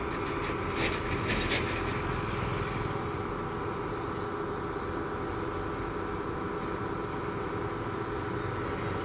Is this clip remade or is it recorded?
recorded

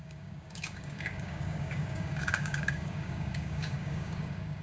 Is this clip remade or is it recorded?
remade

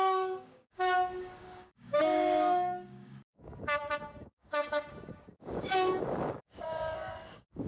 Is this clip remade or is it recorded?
remade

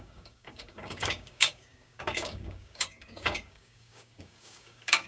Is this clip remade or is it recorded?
remade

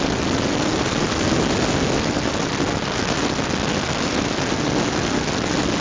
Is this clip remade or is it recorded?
recorded